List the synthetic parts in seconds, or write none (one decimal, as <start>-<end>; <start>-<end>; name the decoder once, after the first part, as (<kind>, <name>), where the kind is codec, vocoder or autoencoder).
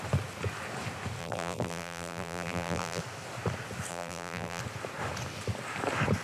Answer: 1.2-3.0 (vocoder, BigVGAN v2); 3.9-4.6